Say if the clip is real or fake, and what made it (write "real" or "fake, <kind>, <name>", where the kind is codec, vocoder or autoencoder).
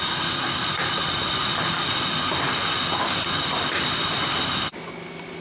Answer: real